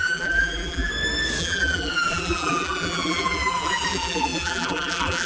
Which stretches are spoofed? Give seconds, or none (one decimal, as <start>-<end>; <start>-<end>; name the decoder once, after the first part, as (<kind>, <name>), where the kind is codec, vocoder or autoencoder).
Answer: 0.0-0.9 (vocoder, BigVGAN v2); 1.4-5.3